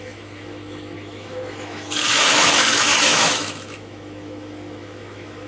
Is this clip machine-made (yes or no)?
yes